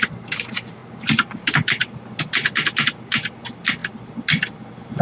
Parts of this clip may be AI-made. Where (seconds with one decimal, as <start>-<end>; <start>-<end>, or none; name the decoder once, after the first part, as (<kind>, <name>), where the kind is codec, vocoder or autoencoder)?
none